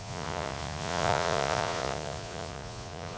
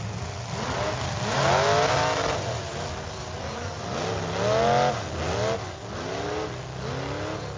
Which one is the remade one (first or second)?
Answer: first